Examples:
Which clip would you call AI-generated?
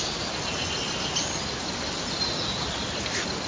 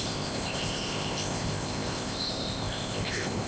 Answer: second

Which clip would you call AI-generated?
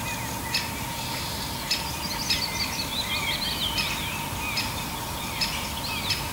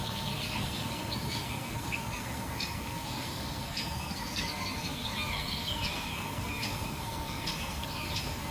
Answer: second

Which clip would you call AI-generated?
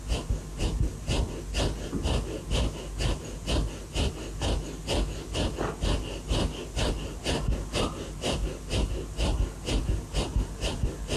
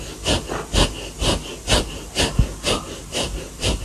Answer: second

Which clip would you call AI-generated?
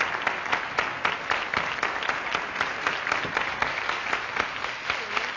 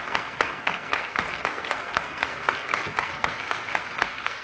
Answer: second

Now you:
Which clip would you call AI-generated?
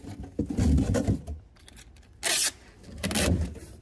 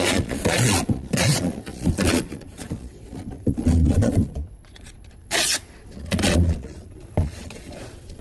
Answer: second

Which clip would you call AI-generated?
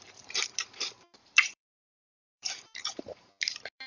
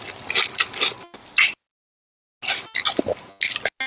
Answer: first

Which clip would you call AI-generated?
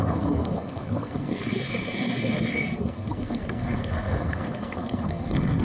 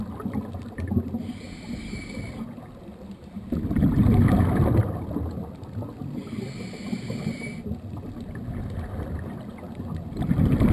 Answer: first